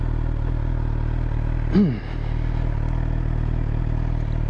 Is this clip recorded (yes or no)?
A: yes